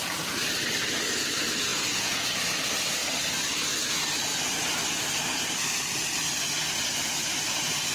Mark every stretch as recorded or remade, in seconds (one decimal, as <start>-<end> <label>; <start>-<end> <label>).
0.0-1.7 recorded; 1.7-2.3 remade; 2.3-7.9 recorded